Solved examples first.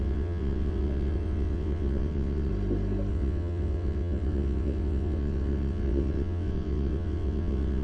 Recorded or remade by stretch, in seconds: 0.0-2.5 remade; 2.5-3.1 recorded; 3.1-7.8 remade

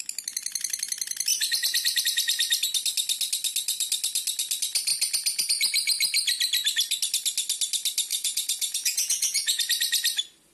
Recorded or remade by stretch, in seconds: 0.0-8.1 recorded; 8.1-9.6 remade; 9.6-10.5 recorded

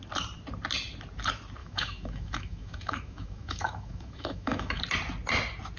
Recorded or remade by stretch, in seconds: 0.0-1.6 recorded; 1.6-4.8 remade; 4.8-5.8 recorded

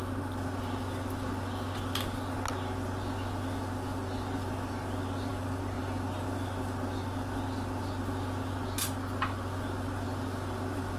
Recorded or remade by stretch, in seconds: 0.0-11.0 recorded

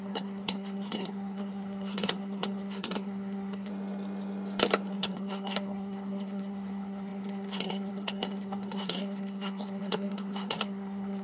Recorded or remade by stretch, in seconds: 0.0-3.7 remade; 3.7-4.9 recorded; 4.9-11.2 remade